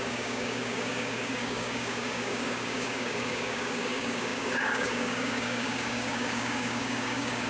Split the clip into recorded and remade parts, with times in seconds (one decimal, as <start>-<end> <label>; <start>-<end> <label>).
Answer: 0.0-7.5 remade